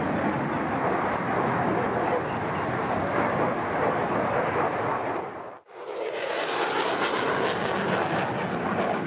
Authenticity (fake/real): real